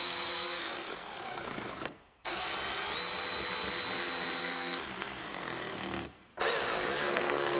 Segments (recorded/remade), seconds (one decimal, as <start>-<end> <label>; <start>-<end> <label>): 0.0-2.5 remade; 2.5-4.4 recorded; 4.4-6.3 remade; 6.3-7.1 recorded; 7.1-7.6 remade